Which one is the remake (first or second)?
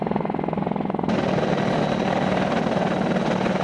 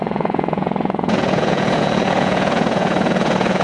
second